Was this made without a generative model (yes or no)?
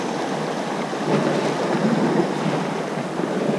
yes